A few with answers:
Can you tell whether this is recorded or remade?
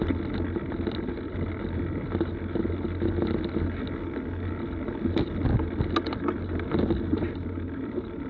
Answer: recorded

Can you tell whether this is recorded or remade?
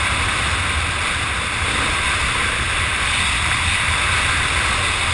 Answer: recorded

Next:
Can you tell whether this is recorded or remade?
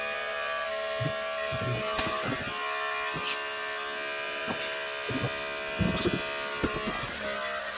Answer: recorded